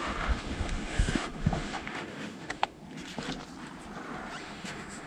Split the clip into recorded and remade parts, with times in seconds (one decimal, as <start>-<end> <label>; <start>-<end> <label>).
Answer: 0.0-2.8 remade; 2.8-4.4 recorded; 4.4-5.1 remade